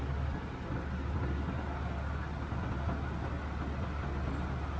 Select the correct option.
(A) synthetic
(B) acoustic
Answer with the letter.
B